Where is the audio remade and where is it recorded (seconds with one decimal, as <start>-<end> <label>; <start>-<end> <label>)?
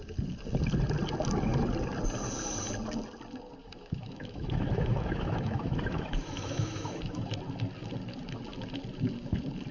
0.0-3.6 recorded; 3.6-7.3 remade; 7.3-9.7 recorded